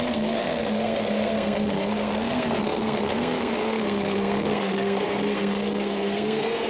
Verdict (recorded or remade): remade